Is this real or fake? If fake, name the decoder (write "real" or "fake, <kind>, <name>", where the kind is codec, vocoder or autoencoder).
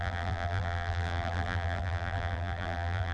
fake, vocoder, BigVGAN v2